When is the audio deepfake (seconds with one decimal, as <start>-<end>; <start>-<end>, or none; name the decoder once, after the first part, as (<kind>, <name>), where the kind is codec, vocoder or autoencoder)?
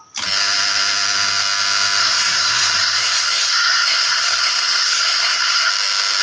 2.0-5.7 (codec, SNAC)